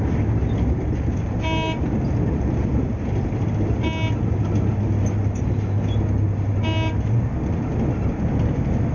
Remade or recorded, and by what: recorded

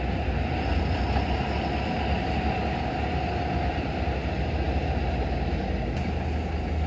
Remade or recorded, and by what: recorded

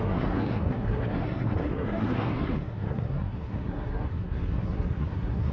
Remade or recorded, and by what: remade, codec, SNAC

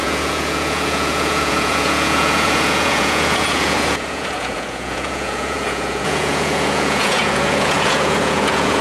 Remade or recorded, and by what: remade, vocoder, Vocos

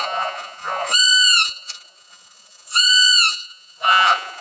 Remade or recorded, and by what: remade, vocoder, Vocos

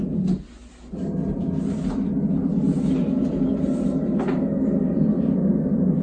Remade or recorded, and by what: recorded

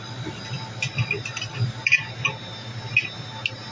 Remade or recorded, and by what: recorded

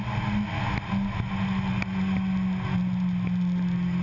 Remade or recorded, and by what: recorded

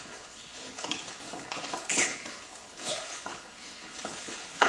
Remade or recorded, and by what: remade, codec, HILCodec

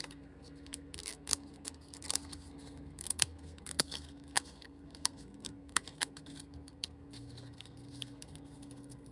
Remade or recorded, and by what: remade, codec, SNAC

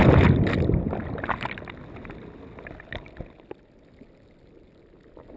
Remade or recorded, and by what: recorded